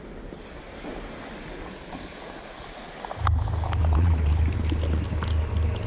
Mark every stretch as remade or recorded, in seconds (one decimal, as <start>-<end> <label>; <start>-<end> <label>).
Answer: 0.0-3.8 recorded; 3.8-4.4 remade; 4.4-5.9 recorded